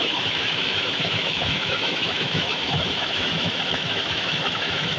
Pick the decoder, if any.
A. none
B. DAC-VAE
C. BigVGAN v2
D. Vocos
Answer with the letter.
B